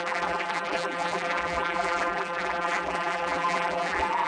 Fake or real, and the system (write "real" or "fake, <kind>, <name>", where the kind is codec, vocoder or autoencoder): fake, vocoder, BigVGAN v2